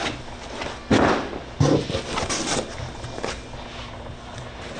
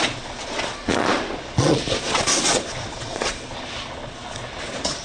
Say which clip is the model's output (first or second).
second